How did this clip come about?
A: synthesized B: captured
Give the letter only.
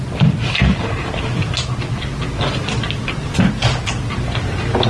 B